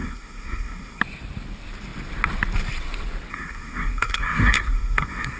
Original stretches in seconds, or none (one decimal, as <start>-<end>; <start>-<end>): 1.0-3.3